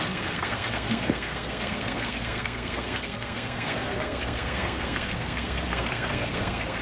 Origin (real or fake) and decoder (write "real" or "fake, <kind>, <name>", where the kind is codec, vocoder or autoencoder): fake, codec, SNAC